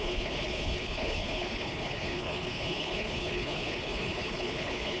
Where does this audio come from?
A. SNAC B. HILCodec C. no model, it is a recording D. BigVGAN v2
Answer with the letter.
B